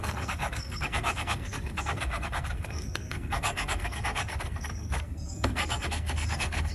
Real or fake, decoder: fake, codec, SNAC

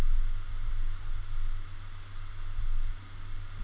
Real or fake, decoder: real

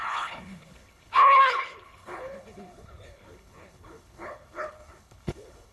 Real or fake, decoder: fake, codec, HILCodec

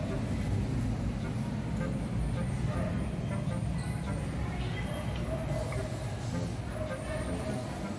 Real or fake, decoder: real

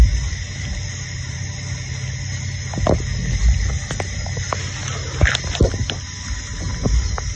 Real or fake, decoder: real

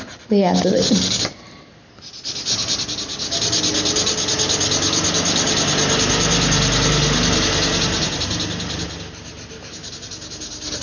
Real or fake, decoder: real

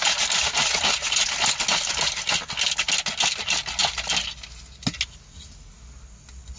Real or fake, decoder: real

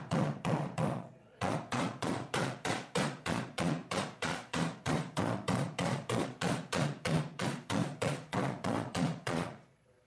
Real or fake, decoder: fake, vocoder, Vocos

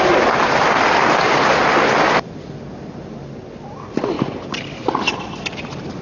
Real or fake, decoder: real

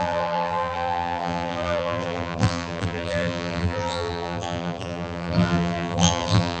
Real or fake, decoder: fake, vocoder, BigVGAN v2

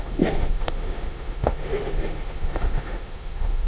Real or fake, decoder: fake, autoencoder, DAC-VAE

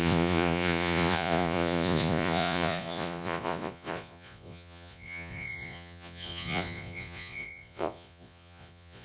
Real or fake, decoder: fake, vocoder, Vocos